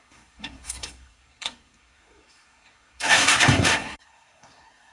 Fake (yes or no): yes